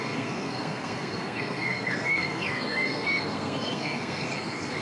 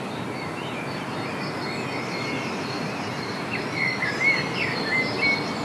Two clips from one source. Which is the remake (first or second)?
first